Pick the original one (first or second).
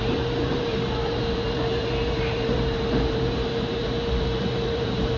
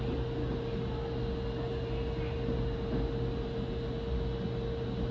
second